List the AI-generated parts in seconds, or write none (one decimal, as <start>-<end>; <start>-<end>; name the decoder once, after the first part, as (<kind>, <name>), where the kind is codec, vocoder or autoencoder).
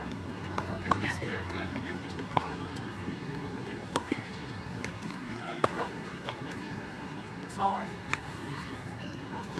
0.0-9.6 (codec, SNAC)